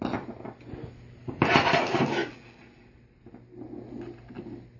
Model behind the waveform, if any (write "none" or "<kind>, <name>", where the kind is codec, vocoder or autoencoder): none